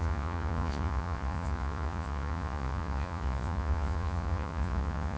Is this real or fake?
fake